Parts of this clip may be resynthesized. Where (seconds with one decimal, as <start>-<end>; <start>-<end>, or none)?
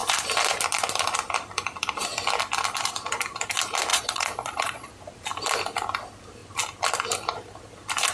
3.9-4.9